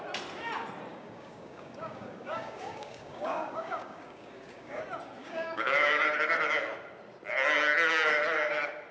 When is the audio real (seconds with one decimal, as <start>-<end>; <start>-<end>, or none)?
0.0-0.9; 4.8-5.2; 6.0-8.9